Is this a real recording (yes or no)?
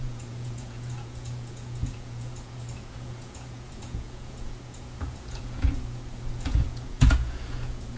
no